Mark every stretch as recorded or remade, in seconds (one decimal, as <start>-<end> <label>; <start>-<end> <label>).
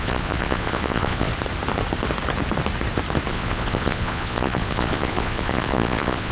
0.0-1.3 remade; 1.3-3.3 recorded; 3.3-6.3 remade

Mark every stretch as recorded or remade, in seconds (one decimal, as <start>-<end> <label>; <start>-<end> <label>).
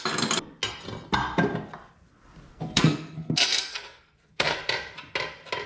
0.0-2.5 recorded; 2.5-4.6 remade; 4.6-5.7 recorded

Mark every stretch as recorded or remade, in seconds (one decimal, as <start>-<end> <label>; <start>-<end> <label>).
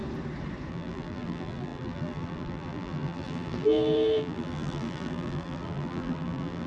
0.0-0.7 recorded; 0.7-6.7 remade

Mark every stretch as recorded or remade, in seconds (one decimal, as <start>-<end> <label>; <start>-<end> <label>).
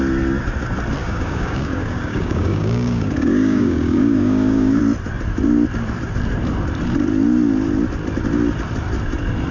0.0-1.0 recorded; 1.0-4.8 remade; 4.8-9.5 recorded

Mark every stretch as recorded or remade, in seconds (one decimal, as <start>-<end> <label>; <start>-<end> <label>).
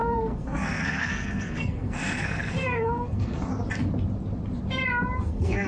0.0-3.5 remade; 3.5-5.2 recorded; 5.2-5.7 remade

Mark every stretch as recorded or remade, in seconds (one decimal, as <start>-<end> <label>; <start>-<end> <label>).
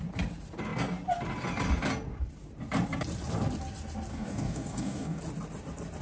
0.0-4.1 recorded; 4.1-5.2 remade; 5.2-6.0 recorded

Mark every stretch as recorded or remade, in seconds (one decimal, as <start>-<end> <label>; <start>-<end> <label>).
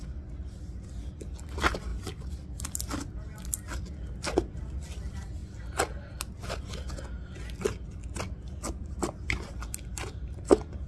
0.0-10.9 recorded